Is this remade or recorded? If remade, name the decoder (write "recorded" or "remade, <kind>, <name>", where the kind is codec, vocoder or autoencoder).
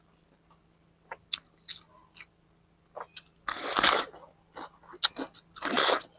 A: recorded